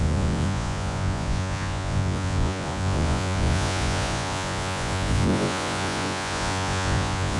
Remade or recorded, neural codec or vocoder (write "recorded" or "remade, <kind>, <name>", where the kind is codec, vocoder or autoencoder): remade, vocoder, Vocos